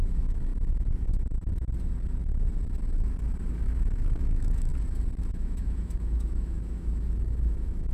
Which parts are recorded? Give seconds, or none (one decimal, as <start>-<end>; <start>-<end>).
0.5-3.5; 4.7-5.3